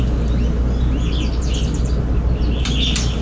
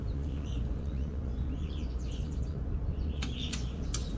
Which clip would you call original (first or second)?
first